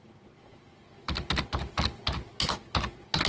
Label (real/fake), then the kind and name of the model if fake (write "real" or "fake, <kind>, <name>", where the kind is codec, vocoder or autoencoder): real